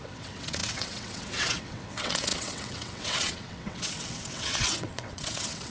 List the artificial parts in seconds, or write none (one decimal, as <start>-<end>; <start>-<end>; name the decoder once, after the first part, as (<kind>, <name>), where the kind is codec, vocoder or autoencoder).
0.0-5.7 (vocoder, WaveNeXt)